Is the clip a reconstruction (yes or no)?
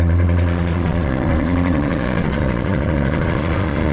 yes